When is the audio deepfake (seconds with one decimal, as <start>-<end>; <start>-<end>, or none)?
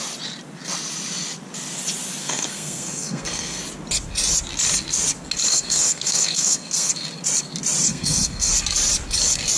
2.2-3.6; 5.5-6.9; 7.9-8.5